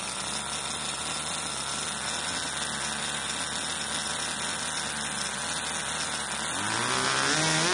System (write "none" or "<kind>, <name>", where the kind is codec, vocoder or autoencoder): none